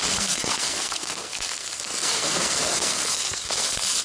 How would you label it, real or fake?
fake